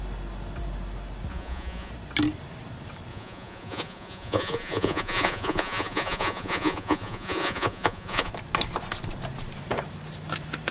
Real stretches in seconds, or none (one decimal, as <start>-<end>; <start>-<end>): 0.0-1.3; 1.9-3.1; 8.3-10.7